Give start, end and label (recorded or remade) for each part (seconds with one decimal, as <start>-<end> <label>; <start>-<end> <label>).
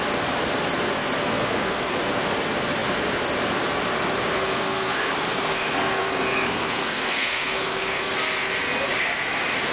0.0-1.2 recorded; 1.2-2.0 remade; 2.0-4.3 recorded; 4.3-5.1 remade; 5.1-5.5 recorded; 5.5-8.0 remade; 8.0-9.7 recorded